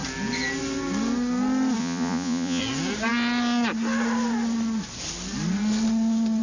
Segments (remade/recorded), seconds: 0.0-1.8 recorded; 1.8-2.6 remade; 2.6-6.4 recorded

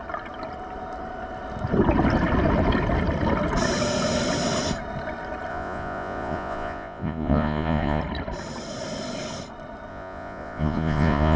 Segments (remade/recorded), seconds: 0.0-5.5 recorded; 5.5-8.0 remade; 8.0-9.9 recorded; 9.9-11.4 remade

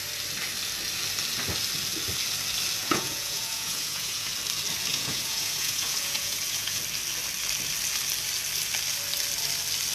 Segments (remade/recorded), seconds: 0.0-2.8 recorded; 2.8-4.3 remade; 4.3-4.9 recorded; 4.9-6.8 remade; 6.8-9.9 recorded

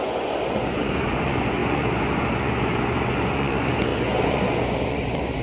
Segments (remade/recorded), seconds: 0.0-5.4 remade